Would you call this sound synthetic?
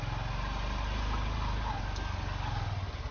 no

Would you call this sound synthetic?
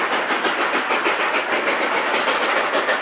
no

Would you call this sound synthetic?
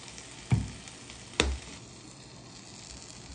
no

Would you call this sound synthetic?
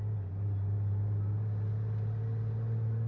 no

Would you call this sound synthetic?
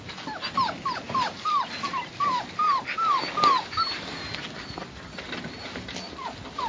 no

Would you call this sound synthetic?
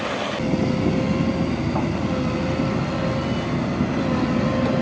no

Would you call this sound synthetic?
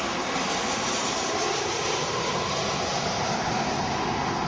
no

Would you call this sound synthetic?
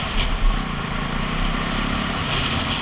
no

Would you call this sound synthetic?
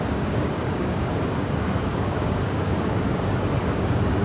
yes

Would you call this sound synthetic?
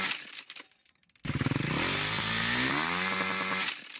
no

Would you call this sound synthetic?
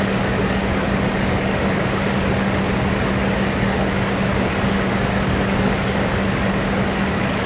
yes